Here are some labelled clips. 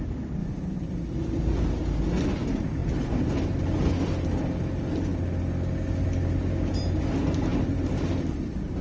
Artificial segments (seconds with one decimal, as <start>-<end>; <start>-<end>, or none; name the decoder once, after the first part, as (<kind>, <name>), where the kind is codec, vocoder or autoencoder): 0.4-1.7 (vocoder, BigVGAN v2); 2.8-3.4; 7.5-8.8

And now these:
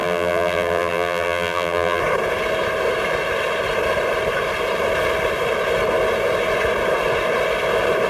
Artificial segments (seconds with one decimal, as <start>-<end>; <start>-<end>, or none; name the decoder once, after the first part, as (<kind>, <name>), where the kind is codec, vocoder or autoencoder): 0.0-2.0 (vocoder, BigVGAN v2)

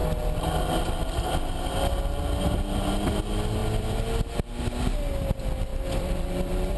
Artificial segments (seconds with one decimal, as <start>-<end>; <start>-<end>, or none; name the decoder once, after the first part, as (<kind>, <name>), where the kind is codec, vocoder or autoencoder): 3.6-4.2 (vocoder, BigVGAN v2); 5.7-6.8

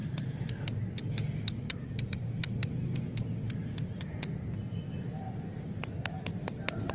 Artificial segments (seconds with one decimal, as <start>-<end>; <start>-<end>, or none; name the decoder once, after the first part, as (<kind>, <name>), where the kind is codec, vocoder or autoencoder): 0.0-2.1 (vocoder, BigVGAN v2)

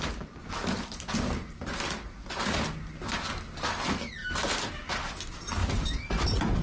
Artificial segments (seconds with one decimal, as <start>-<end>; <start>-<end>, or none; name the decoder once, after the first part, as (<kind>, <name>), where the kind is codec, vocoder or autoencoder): 4.2-5.1 (vocoder, BigVGAN v2); 5.6-6.6